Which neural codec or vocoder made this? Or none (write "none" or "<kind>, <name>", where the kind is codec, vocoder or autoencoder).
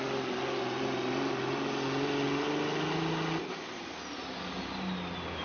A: none